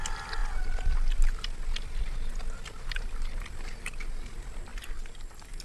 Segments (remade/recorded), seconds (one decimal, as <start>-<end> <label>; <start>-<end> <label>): 0.0-5.6 recorded